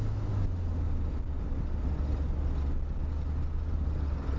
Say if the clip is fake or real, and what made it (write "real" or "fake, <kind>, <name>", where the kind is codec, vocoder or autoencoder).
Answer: real